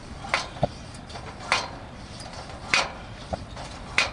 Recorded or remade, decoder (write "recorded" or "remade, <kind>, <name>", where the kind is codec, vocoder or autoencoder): remade, vocoder, BigVGAN v2